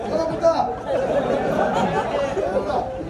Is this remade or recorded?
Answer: recorded